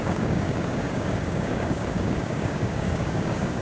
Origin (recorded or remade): remade